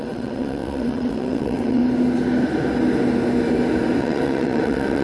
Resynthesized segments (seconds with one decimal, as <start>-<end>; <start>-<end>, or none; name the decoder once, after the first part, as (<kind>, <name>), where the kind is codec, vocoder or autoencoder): 0.0-1.8 (vocoder, WaveNeXt); 4.0-5.0